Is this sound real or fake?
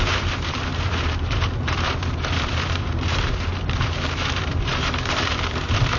fake